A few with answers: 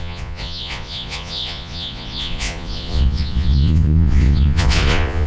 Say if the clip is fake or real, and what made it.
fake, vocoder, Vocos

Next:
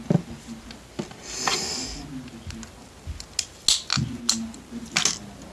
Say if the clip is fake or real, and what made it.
real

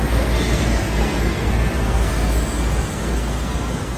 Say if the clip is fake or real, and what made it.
fake, codec, SNAC